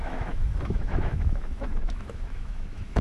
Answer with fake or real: fake